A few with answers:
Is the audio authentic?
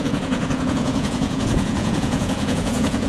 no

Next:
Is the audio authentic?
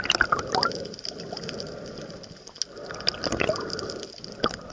yes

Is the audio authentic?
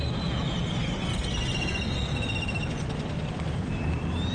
yes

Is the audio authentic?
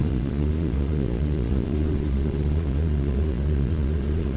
no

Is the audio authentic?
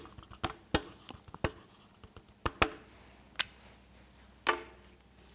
yes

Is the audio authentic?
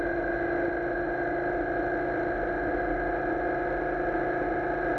yes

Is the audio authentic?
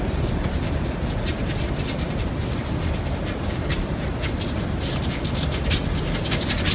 yes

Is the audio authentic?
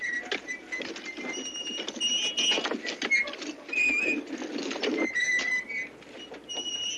yes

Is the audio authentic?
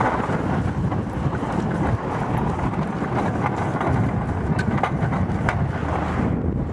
yes